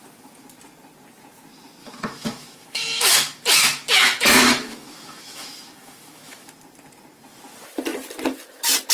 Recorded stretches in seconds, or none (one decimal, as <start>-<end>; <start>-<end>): 0.0-1.8; 6.5-8.9